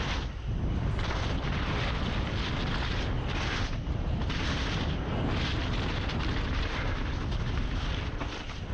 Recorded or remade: remade